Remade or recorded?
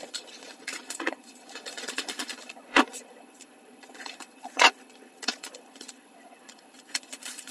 remade